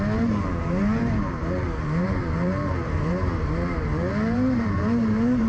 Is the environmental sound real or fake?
fake